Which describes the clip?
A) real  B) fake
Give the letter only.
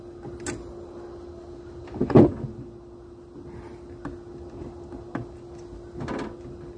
A